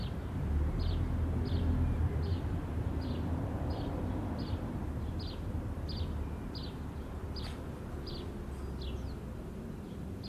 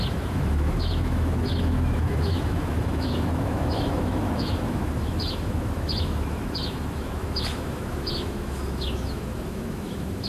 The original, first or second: first